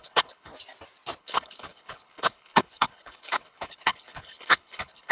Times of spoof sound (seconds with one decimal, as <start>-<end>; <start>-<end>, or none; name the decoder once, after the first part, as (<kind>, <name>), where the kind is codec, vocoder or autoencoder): 0.0-0.5 (codec, HILCodec); 1.2-5.1

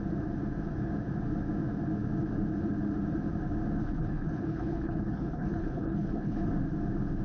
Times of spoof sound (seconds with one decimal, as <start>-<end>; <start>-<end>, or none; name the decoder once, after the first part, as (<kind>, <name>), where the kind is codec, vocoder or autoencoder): 3.8-6.5 (codec, HILCodec)

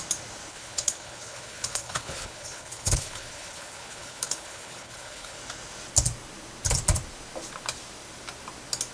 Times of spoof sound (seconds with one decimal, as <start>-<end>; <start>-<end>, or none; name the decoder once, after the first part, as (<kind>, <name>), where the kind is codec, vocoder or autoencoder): 0.5-5.4 (codec, HILCodec)

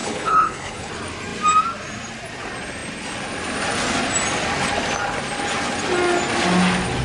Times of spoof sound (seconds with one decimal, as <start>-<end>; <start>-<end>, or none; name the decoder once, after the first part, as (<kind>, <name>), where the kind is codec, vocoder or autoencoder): 0.0-0.9 (codec, HILCodec)

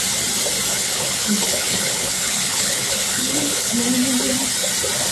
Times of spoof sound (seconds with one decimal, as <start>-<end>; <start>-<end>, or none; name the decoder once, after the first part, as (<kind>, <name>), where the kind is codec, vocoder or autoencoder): 0.7-3.8 (codec, HILCodec)